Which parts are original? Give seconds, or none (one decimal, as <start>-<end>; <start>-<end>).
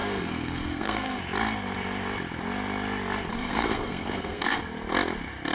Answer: 1.2-3.3; 4.6-5.5